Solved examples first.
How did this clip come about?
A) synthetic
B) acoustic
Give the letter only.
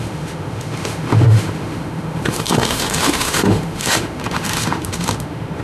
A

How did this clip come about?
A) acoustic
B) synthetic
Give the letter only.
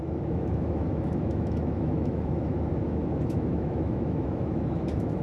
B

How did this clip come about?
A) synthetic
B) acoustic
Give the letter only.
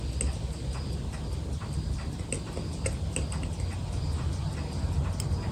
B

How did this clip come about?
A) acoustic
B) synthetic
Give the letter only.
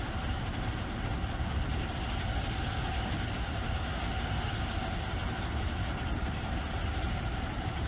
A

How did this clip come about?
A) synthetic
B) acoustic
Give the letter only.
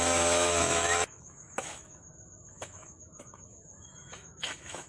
A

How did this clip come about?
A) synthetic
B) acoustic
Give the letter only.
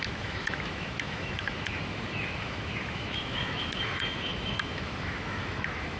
A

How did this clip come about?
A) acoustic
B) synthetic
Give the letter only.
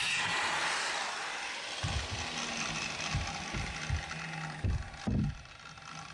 A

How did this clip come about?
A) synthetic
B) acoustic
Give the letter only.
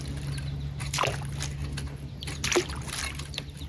B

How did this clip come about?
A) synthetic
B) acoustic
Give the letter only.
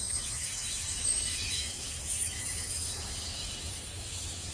A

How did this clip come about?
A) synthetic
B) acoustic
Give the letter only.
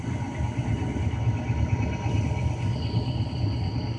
B